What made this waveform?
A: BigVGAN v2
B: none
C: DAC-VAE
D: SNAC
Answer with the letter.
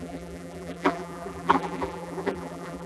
A